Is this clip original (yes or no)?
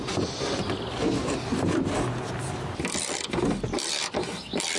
yes